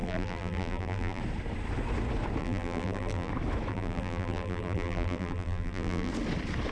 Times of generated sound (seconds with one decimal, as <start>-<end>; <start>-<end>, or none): 0.0-1.2; 2.4-3.3; 3.7-6.1